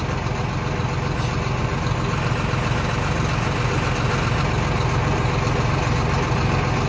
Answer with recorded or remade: recorded